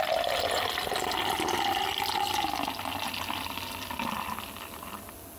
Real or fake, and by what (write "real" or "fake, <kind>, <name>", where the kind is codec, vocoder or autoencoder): real